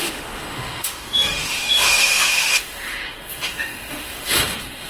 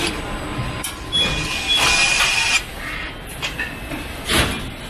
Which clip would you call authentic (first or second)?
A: second